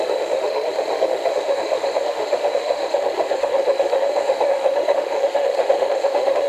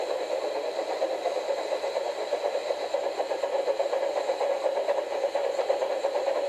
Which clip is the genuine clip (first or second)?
second